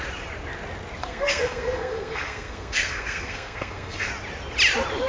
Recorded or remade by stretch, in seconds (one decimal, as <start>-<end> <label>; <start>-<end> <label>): 0.0-1.0 recorded; 1.0-4.1 remade; 4.1-5.1 recorded